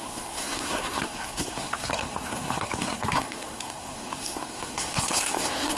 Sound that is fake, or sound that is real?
fake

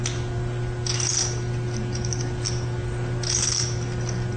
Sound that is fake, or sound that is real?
real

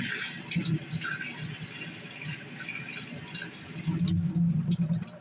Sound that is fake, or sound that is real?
real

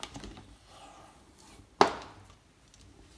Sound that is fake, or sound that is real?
real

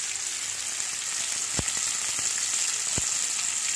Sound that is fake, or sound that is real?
real